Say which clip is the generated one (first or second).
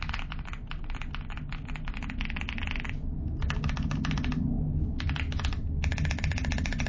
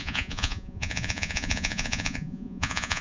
second